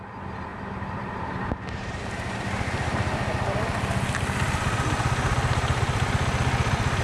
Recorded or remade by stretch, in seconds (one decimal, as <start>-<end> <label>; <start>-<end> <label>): 0.0-0.5 recorded; 0.5-2.1 remade; 2.1-7.0 recorded